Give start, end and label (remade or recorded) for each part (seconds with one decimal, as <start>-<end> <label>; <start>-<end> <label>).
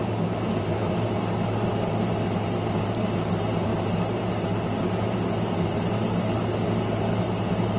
0.0-7.8 remade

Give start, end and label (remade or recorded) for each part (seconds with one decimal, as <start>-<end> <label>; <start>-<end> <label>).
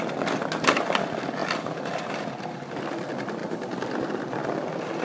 0.0-1.4 recorded; 1.4-2.8 remade; 2.8-5.0 recorded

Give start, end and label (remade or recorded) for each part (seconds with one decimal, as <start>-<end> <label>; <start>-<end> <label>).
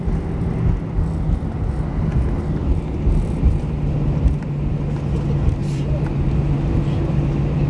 0.0-5.6 recorded; 5.6-6.3 remade; 6.3-7.7 recorded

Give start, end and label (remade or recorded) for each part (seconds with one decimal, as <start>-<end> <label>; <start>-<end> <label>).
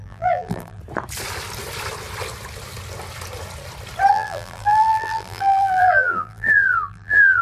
0.0-0.8 remade; 0.8-4.1 recorded; 4.1-7.4 remade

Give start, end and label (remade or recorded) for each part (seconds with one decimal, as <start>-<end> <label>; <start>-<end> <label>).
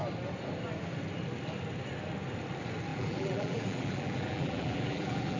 0.0-2.9 recorded; 2.9-5.4 remade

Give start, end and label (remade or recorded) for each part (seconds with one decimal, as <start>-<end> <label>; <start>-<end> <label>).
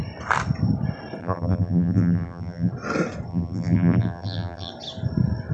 0.0-1.2 recorded; 1.2-2.7 remade; 2.7-3.3 recorded; 3.3-4.7 remade; 4.7-5.5 recorded